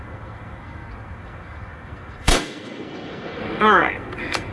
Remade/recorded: remade